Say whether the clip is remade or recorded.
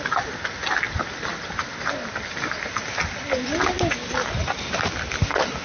recorded